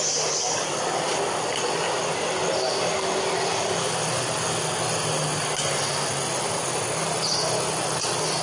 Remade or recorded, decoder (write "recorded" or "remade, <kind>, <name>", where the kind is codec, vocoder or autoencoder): recorded